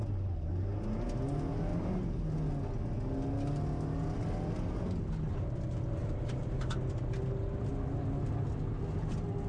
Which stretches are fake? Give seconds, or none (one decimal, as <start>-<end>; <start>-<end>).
6.0-6.7